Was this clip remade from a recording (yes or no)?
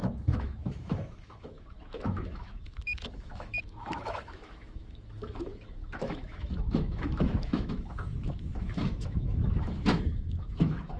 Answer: yes